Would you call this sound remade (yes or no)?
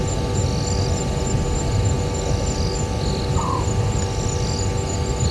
no